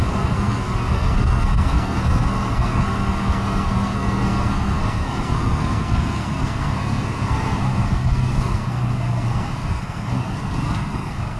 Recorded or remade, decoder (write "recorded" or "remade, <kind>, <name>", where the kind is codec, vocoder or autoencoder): remade, codec, SNAC